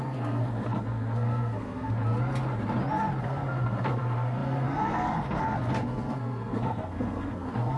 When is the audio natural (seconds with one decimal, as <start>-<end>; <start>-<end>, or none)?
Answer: 2.0-3.2